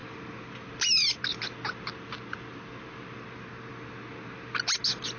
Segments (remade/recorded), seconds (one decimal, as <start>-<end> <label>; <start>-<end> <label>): 0.0-5.2 recorded